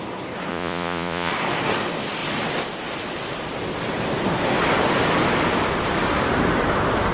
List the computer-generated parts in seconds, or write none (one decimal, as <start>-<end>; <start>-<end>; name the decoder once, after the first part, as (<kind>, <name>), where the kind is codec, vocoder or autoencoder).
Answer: 0.5-1.3 (vocoder, Vocos)